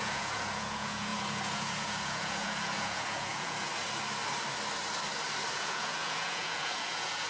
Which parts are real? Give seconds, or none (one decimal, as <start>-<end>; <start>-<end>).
3.7-5.5